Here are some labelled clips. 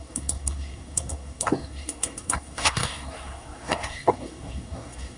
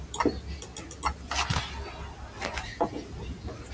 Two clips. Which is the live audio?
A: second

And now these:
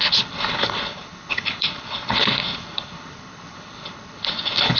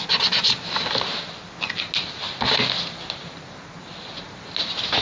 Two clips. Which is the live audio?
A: second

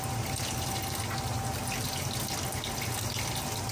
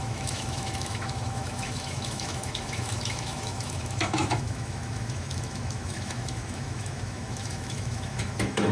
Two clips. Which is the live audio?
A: first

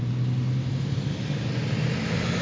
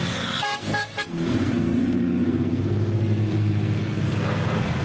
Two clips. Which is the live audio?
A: first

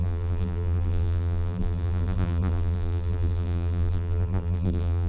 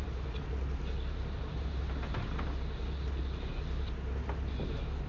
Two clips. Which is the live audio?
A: second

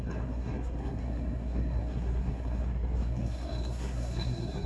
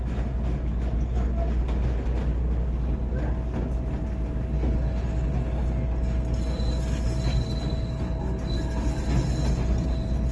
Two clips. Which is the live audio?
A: second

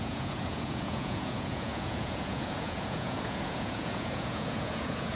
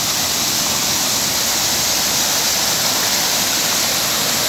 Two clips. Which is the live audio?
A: second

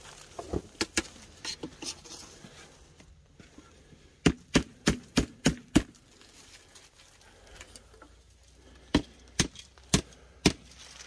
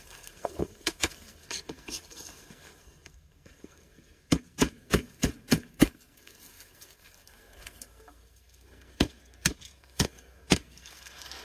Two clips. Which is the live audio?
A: first